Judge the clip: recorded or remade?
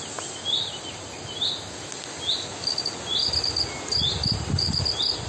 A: recorded